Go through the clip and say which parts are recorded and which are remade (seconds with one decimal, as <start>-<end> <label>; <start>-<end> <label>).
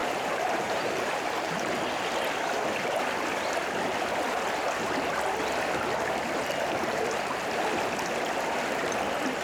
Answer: 0.0-1.6 remade; 1.6-9.4 recorded